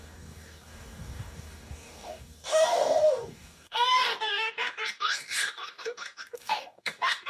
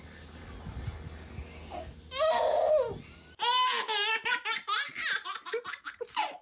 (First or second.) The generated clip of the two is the first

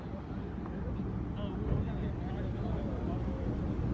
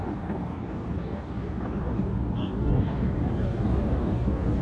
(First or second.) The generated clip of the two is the second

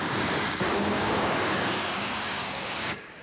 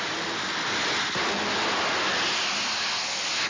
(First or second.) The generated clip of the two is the first